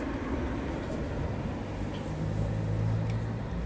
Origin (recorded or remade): recorded